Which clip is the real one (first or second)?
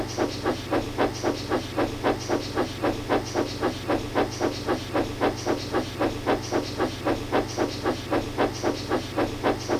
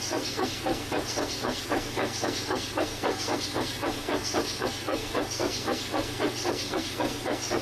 first